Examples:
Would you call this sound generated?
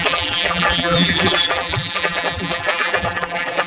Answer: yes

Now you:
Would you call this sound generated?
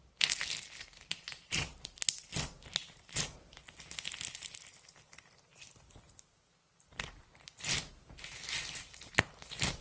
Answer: no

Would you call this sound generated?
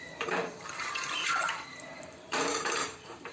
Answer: yes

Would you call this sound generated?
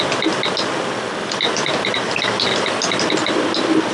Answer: no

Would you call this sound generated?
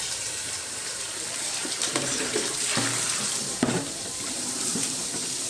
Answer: yes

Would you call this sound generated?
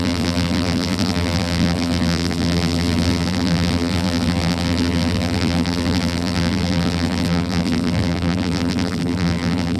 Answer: yes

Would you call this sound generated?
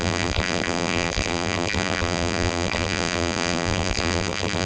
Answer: yes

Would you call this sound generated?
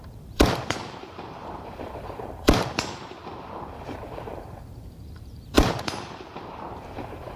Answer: yes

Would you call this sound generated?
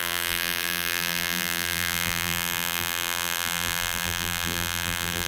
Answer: yes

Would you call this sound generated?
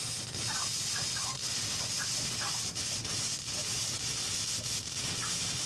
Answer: no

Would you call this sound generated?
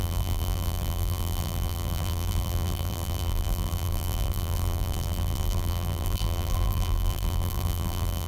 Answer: yes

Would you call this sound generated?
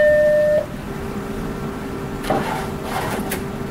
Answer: no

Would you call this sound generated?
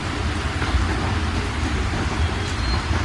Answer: no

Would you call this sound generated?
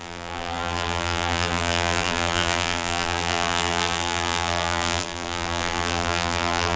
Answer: yes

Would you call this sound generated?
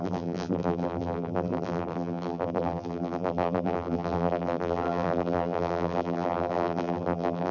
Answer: yes